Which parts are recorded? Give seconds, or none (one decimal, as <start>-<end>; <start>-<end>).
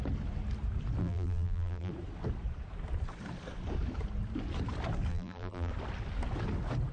0.0-1.0; 1.9-5.1; 5.7-6.9